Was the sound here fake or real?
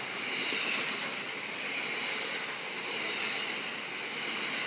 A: real